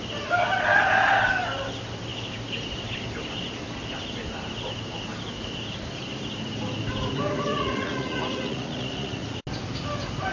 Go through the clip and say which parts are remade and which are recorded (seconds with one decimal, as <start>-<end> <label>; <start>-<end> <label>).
0.0-7.5 recorded; 7.5-9.4 remade; 9.4-10.3 recorded